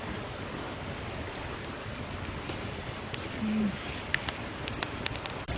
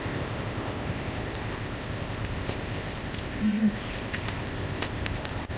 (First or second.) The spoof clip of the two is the second